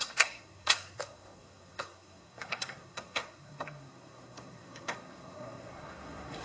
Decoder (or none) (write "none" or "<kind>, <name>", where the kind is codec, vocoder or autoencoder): codec, SNAC